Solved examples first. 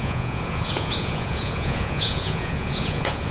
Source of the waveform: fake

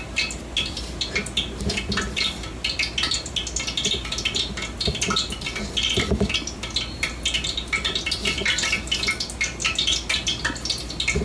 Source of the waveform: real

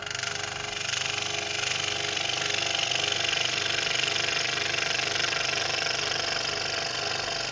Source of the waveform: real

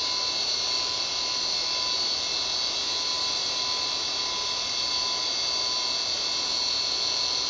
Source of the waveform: real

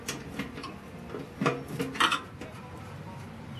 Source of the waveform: real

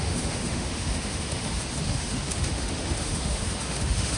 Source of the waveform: fake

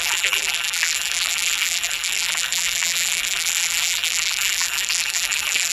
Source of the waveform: fake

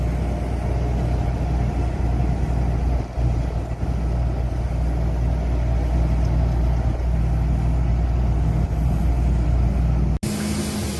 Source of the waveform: real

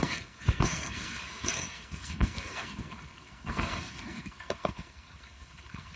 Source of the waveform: fake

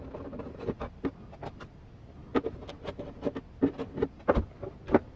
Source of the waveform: real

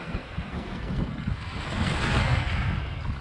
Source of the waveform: fake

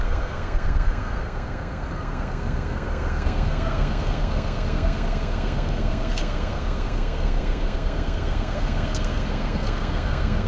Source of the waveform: fake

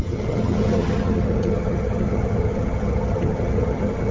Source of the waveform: fake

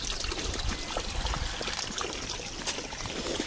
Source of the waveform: real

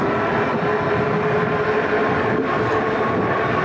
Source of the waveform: real